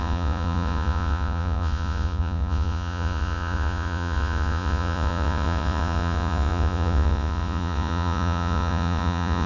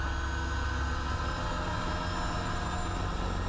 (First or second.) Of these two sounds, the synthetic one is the first